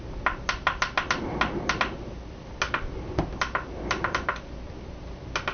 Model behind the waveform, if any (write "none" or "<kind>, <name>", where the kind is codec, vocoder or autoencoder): none